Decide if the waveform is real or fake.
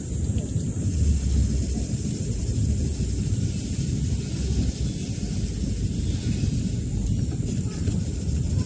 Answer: real